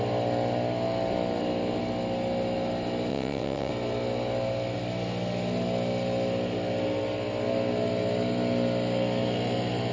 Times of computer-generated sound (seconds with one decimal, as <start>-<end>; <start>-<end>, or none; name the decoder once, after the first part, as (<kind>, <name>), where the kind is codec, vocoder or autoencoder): 3.1-3.7 (vocoder, WaveNeXt)